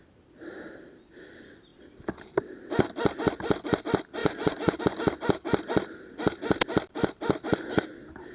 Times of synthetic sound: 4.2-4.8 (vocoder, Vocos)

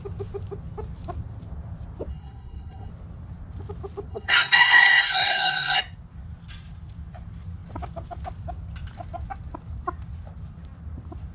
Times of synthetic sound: 2.1-2.9 (codec, SNAC); 4.1-5.8

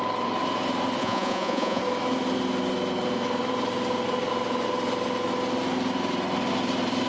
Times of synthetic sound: 1.0-1.8 (vocoder, Vocos)

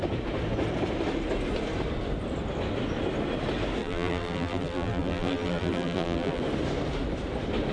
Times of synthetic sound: 3.8-6.4 (vocoder, BigVGAN v2)

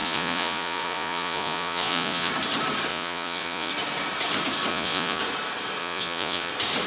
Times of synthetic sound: 0.0-2.3 (vocoder, Vocos); 2.9-3.7; 4.7-5.2; 5.8-6.5

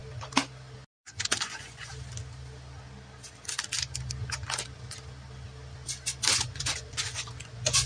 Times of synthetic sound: 0.9-1.9 (vocoder, Vocos); 6.3-7.9

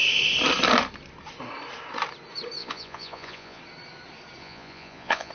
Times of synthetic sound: 2.6-3.6 (vocoder, Vocos); 4.4-5.3

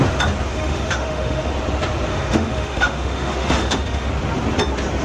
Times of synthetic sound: 0.5-1.5 (autoencoder, DAC-VAE); 2.1-4.1